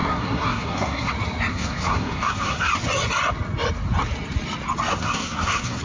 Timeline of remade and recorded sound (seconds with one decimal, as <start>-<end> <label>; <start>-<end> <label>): 0.0-1.1 remade; 1.1-1.5 recorded; 1.5-2.7 remade; 2.7-4.9 recorded; 4.9-5.8 remade

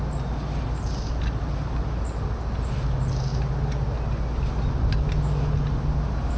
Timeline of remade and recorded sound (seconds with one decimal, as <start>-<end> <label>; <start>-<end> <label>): 0.0-6.4 recorded

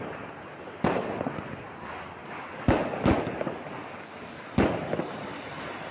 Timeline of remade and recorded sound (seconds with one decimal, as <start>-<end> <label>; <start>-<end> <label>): 0.0-2.2 recorded; 2.2-4.4 remade; 4.4-5.9 recorded

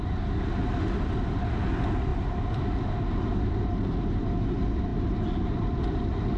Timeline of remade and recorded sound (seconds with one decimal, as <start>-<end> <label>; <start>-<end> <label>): 0.0-6.4 recorded